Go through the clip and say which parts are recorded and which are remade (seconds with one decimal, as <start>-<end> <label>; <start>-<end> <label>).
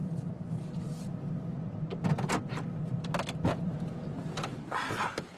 0.0-1.3 remade; 1.3-1.9 recorded; 1.9-5.4 remade